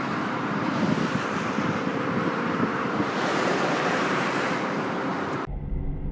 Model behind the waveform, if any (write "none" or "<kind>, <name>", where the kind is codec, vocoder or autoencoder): vocoder, BigVGAN v2